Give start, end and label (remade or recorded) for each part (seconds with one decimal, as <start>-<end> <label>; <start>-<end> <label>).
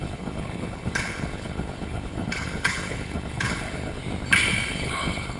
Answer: 0.0-4.0 remade; 4.0-4.7 recorded; 4.7-5.4 remade